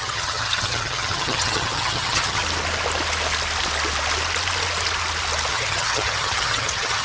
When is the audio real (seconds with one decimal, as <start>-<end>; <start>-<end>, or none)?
2.4-5.5